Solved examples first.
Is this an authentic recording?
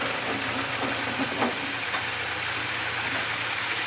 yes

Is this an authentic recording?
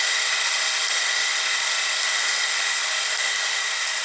yes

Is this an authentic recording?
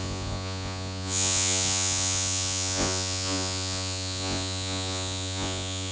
no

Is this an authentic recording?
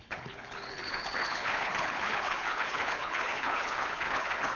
no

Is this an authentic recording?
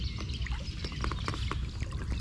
yes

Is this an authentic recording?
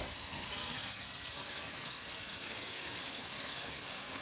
no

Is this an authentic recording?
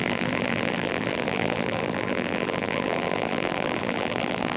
no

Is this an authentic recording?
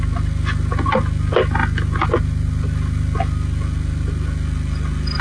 yes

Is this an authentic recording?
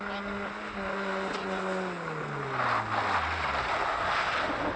yes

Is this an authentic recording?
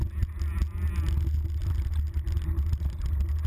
yes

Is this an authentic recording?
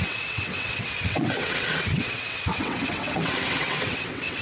no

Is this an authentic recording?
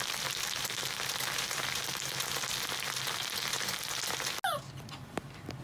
yes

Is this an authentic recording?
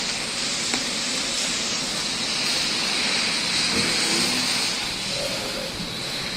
yes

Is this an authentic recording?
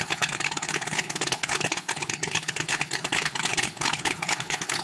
no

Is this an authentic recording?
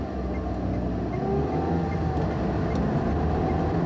yes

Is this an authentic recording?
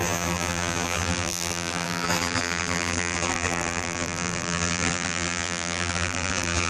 no